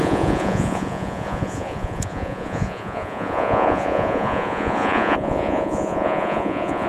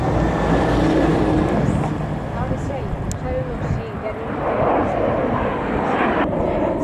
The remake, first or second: first